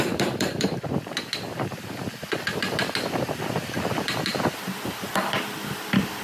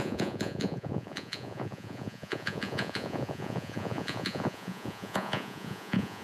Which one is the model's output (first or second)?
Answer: second